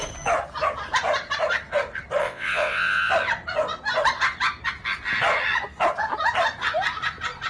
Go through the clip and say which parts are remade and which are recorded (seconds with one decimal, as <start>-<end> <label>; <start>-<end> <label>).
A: 0.0-2.2 recorded; 2.2-3.1 remade; 3.1-7.5 recorded